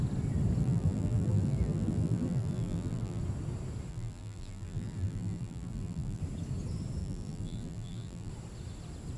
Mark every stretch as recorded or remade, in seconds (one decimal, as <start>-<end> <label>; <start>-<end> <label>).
0.0-0.6 recorded; 0.6-3.2 remade; 3.2-3.9 recorded; 3.9-6.2 remade; 6.2-7.0 recorded; 7.0-8.3 remade; 8.3-9.2 recorded